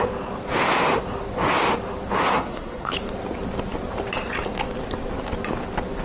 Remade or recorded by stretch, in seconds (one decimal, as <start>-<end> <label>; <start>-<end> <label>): 0.0-2.3 recorded; 2.3-2.9 remade; 2.9-6.0 recorded